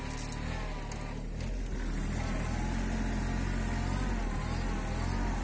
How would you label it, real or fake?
real